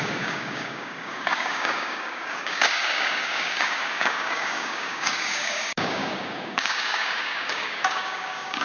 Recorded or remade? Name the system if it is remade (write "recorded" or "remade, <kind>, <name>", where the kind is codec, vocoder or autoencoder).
remade, codec, DAC